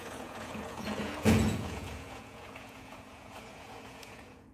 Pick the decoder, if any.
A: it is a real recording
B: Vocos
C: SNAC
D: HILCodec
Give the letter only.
B